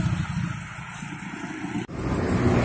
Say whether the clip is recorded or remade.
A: recorded